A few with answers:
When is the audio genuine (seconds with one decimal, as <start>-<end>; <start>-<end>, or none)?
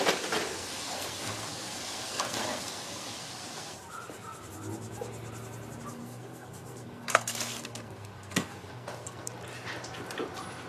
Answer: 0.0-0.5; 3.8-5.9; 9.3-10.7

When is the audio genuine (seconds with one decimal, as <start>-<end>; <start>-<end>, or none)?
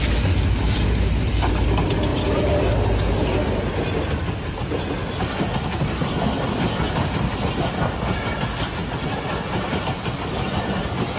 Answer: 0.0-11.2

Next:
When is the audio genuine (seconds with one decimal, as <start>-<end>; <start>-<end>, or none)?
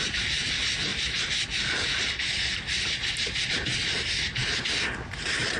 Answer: 0.0-5.6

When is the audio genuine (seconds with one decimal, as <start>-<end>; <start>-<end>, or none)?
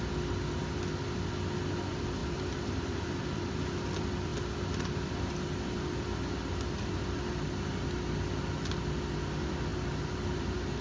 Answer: 0.0-2.2; 3.8-9.7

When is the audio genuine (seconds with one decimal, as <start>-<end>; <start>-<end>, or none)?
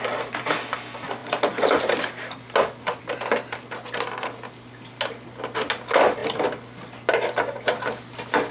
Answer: 0.0-8.5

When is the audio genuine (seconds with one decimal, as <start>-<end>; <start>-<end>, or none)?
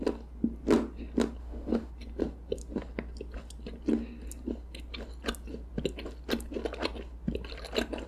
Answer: 0.0-1.4; 1.9-8.1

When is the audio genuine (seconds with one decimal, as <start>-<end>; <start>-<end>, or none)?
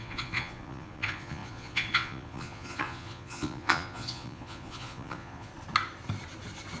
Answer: 5.5-6.8